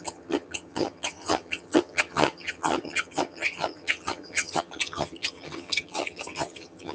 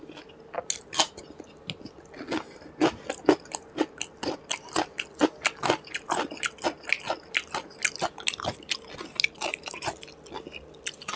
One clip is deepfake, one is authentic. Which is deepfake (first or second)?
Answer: first